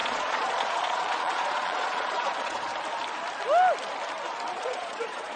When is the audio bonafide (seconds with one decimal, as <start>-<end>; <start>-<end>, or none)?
2.7-4.5